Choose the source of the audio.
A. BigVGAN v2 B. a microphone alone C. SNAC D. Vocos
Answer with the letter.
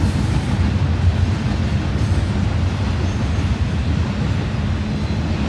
B